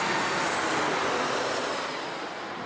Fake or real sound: real